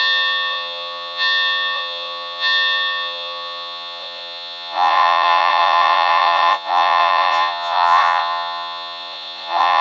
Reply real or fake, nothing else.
fake